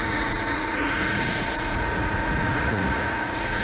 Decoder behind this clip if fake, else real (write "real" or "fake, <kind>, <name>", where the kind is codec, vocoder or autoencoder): fake, vocoder, Vocos